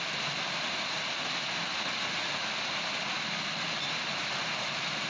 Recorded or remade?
recorded